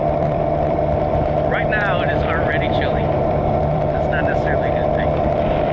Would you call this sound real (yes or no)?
no